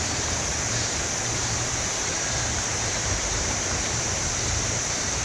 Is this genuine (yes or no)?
no